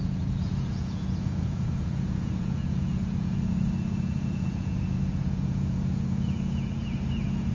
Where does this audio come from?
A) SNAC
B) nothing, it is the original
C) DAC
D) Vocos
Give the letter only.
D